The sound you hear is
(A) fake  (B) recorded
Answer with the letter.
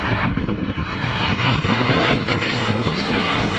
A